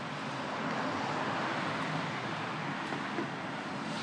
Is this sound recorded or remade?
recorded